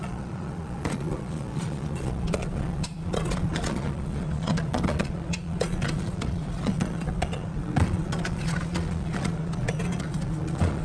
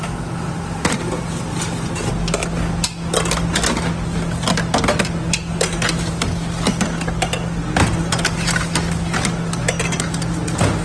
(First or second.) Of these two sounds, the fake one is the first